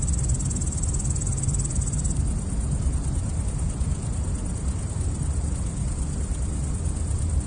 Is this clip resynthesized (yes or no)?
no